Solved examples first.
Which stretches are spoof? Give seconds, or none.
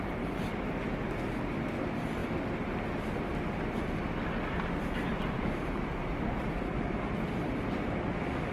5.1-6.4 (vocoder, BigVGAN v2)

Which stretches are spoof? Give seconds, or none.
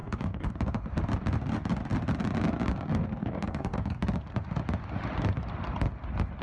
0.0-0.5 (codec, DAC); 3.2-4.0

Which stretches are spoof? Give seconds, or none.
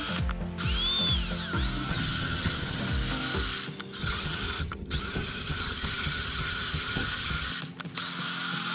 1.9-2.8 (vocoder, HiFi-GAN); 4.0-7.5